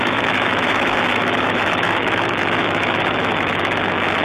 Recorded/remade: remade